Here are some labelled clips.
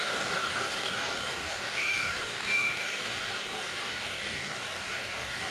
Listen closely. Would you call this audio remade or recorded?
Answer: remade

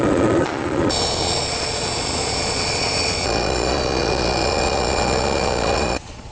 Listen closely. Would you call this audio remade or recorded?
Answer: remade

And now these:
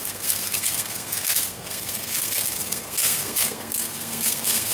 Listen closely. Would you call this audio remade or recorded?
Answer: remade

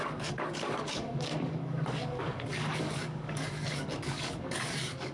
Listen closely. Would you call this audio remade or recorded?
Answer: remade